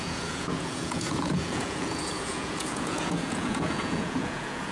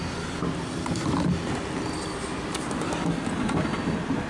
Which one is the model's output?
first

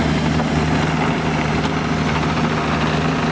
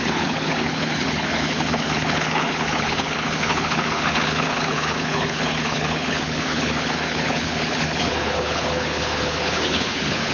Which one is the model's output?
second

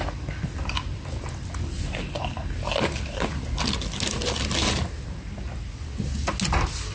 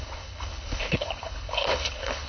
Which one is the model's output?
second